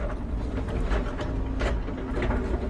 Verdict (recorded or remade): recorded